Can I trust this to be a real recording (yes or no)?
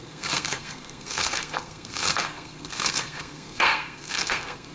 no